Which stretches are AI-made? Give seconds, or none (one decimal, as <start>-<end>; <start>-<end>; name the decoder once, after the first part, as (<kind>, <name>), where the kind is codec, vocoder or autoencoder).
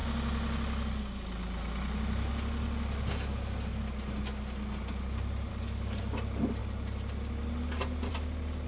5.5-6.0 (codec, DAC)